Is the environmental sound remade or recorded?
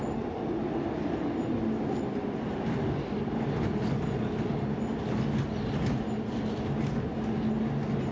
recorded